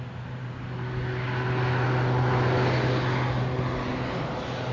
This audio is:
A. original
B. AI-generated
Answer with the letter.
A